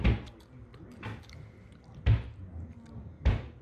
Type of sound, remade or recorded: recorded